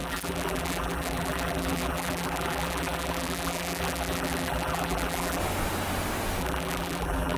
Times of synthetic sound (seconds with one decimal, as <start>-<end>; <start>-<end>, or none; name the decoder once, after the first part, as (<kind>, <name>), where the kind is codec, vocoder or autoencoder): 0.0-5.4 (vocoder, BigVGAN v2); 6.4-7.4